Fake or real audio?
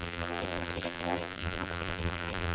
fake